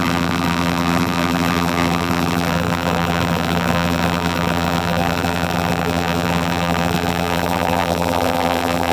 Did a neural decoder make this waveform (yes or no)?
yes